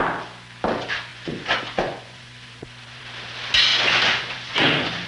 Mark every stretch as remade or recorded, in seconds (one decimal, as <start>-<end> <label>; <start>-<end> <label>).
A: 0.0-1.1 recorded; 1.1-3.0 remade; 3.0-3.7 recorded; 3.7-5.1 remade